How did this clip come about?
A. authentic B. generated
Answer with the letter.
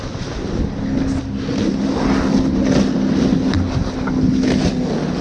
A